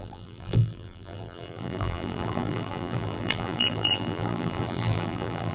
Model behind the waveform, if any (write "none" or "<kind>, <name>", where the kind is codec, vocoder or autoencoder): vocoder, BigVGAN v2